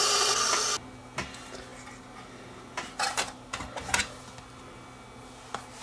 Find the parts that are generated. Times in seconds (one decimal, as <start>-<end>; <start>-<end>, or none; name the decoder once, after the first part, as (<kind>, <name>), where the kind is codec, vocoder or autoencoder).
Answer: none